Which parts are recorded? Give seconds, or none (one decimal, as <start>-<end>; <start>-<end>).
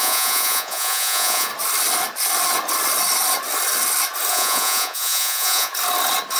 1.5-4.3; 5.7-6.4